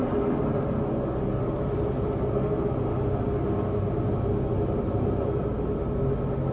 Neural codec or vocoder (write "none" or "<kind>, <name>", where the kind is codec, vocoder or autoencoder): none